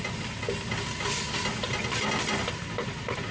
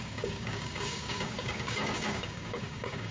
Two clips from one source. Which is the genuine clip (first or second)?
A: first